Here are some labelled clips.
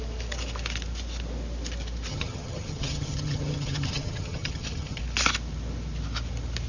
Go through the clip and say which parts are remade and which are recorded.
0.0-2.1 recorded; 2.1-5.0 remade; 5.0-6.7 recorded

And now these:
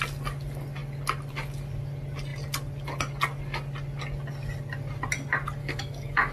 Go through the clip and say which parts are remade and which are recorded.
0.0-5.6 recorded; 5.6-6.3 remade